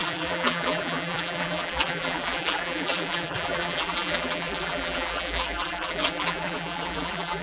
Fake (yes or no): yes